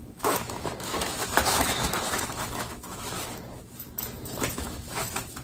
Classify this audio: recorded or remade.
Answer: remade